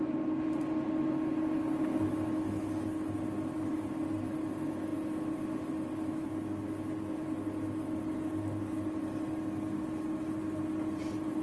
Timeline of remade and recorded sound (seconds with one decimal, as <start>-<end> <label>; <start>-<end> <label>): 0.0-11.4 recorded